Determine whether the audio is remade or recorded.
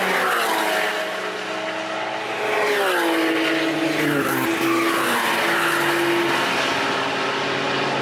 recorded